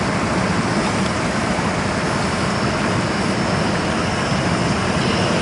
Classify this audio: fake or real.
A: real